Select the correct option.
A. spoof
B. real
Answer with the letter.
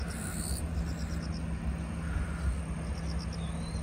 B